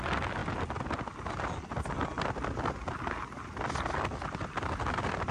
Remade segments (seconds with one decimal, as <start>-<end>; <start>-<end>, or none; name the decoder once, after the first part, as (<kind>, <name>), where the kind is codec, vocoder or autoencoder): none